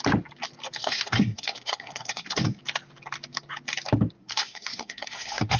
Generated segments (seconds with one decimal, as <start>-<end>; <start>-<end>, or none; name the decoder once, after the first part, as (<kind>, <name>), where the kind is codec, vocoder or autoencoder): 0.8-2.6 (codec, SNAC); 4.2-5.6